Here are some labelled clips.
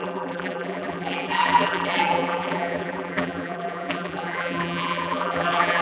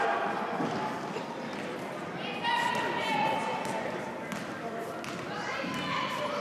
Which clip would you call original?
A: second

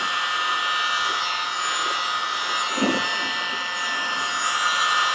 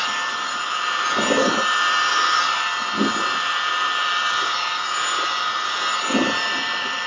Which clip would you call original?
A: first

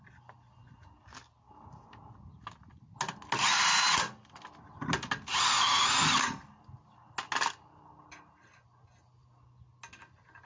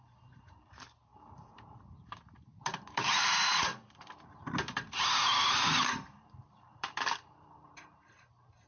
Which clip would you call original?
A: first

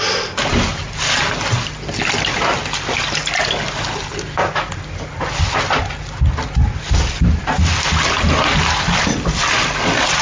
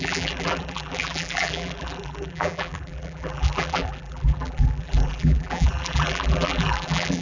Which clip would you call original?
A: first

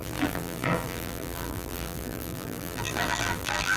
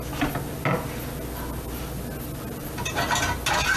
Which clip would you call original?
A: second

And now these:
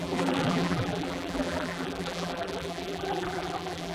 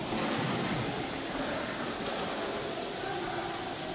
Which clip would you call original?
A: second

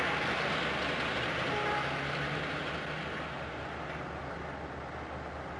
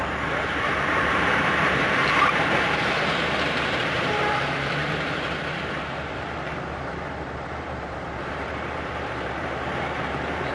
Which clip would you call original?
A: first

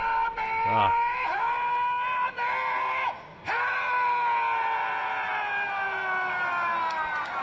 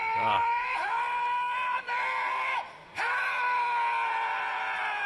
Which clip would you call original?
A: first